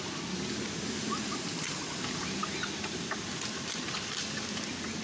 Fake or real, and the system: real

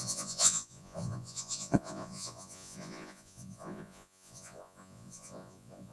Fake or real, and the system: fake, vocoder, Vocos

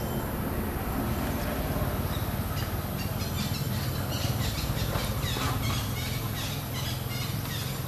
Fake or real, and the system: real